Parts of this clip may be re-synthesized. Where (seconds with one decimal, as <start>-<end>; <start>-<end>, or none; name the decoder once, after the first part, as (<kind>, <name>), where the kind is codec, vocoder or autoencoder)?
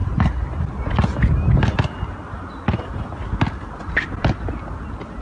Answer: none